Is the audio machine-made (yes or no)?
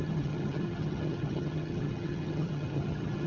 yes